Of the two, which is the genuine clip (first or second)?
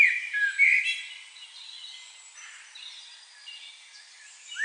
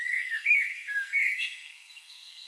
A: first